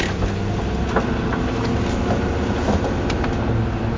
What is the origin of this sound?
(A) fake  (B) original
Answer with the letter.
B